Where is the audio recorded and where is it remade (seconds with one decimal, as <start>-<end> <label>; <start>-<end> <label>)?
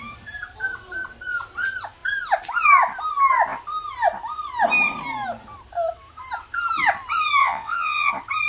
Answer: 0.0-7.4 recorded; 7.4-8.1 remade; 8.1-8.5 recorded